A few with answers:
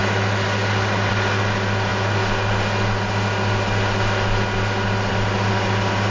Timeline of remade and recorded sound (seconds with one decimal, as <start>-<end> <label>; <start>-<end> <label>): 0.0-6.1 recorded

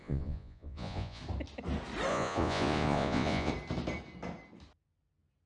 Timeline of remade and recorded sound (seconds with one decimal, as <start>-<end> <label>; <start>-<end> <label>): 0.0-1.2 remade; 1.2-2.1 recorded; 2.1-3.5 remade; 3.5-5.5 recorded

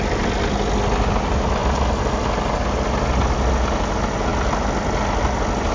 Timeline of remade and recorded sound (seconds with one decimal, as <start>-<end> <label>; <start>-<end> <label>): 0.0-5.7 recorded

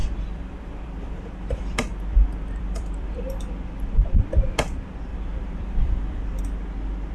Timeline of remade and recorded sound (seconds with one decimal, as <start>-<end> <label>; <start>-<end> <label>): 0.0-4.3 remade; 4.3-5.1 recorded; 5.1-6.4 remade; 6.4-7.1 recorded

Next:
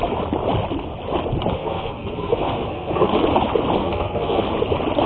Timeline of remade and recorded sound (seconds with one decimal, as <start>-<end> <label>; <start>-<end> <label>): 0.0-1.6 recorded; 1.6-3.1 remade; 3.1-3.8 recorded; 3.8-4.4 remade; 4.4-5.1 recorded